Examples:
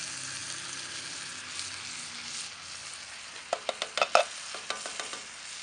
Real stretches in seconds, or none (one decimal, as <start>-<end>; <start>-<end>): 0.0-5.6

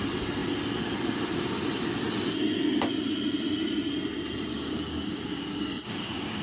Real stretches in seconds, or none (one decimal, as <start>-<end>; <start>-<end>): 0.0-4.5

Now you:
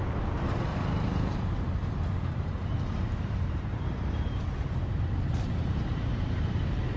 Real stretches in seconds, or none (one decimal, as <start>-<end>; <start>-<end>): 0.0-0.7; 1.4-1.8; 6.0-7.0

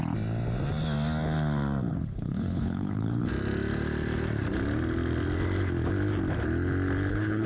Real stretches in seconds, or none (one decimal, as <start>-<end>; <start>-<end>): 0.0-1.9; 3.3-7.1

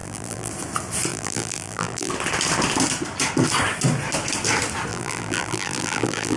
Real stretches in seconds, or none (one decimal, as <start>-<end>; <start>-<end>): 0.5-1.1; 2.1-4.9

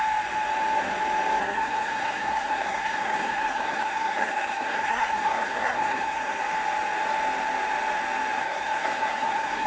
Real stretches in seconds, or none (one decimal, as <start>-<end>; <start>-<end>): 0.0-1.4; 6.4-8.4